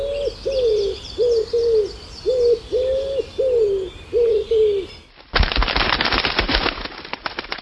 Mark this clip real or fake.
real